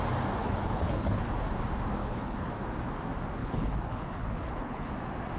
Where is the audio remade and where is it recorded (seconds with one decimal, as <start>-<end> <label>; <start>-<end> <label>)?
0.0-0.4 recorded; 0.4-1.3 remade; 1.3-2.0 recorded; 2.0-2.5 remade; 2.5-3.4 recorded; 3.4-4.9 remade; 4.9-5.4 recorded